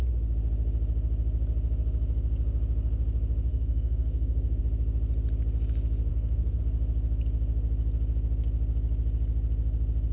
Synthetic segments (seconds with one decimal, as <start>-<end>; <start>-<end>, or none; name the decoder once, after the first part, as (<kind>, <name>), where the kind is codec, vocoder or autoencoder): 3.5-4.6 (codec, SNAC); 6.1-6.6